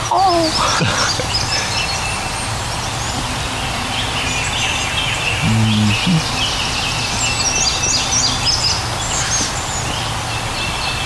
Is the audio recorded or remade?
recorded